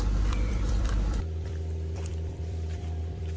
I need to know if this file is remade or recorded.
remade